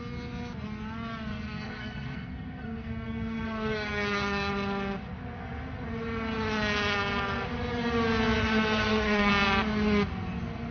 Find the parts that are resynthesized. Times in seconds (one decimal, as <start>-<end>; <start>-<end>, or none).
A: 1.3-4.5; 8.4-9.3